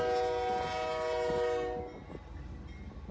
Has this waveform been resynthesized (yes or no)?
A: no